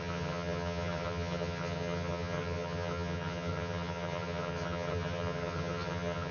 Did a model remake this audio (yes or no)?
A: yes